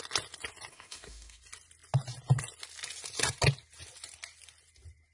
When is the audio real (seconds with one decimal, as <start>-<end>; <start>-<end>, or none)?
0.0-0.7; 1.4-5.1